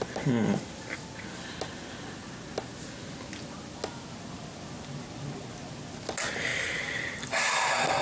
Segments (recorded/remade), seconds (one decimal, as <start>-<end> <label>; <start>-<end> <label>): 0.0-6.5 recorded; 6.5-7.2 remade; 7.2-8.0 recorded